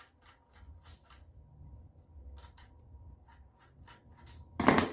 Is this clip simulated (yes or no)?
no